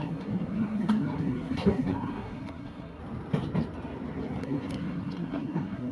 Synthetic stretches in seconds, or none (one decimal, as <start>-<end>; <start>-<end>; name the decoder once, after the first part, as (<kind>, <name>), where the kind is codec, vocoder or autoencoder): 0.0-3.0 (codec, SNAC); 4.4-5.9